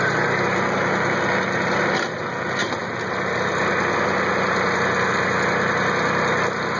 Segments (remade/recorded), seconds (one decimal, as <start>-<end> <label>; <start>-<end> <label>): 0.0-6.8 recorded